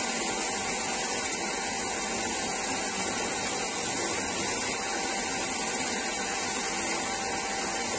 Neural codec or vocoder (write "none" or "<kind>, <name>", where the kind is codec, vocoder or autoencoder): none